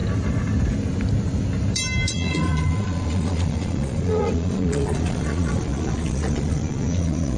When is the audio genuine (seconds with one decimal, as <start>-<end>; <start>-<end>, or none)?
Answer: 0.0-2.1